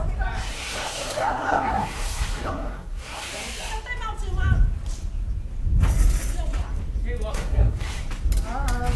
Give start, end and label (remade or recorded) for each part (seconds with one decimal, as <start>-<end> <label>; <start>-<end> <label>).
0.0-0.5 recorded; 0.5-3.3 remade; 3.3-7.3 recorded; 7.3-8.0 remade; 8.0-9.0 recorded